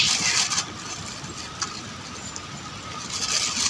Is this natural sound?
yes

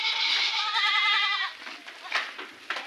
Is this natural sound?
yes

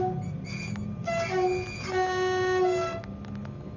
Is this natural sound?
yes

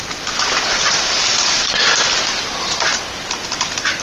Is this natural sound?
yes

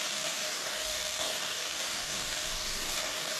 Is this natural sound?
no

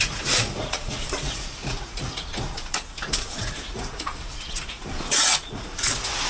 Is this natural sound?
no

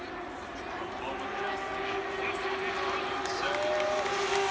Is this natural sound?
yes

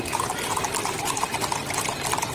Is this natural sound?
yes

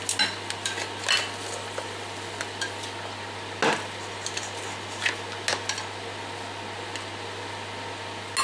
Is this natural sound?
yes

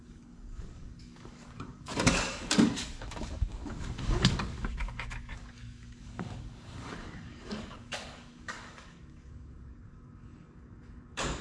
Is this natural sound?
no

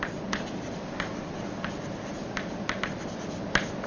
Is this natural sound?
yes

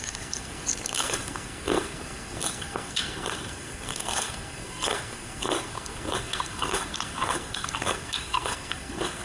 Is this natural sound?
no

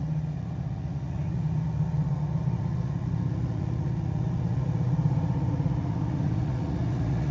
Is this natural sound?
no